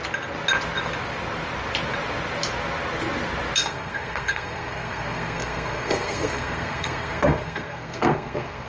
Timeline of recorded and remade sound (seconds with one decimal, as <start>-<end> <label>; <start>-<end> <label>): 0.0-3.6 recorded; 3.6-8.7 remade